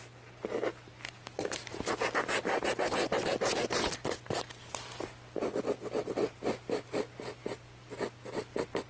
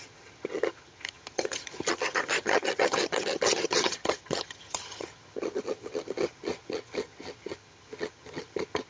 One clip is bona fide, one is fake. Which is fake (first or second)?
second